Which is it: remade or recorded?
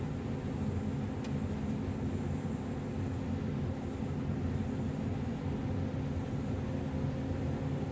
recorded